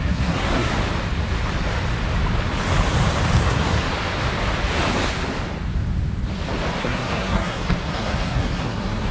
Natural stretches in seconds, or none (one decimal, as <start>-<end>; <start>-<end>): 0.7-3.4; 3.9-6.8